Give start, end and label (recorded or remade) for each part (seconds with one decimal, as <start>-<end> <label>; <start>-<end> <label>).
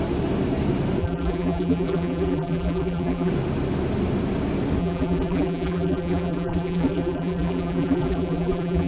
0.0-1.0 recorded; 1.0-3.3 remade; 3.3-4.8 recorded; 4.8-8.9 remade